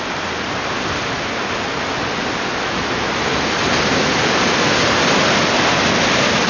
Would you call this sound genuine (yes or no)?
yes